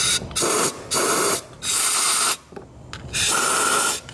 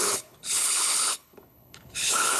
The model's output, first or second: second